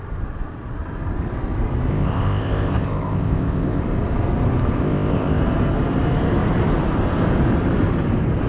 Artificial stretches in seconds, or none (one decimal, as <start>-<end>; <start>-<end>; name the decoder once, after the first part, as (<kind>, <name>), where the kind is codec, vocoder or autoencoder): 1.9-3.8 (codec, ZipCodec); 4.8-5.4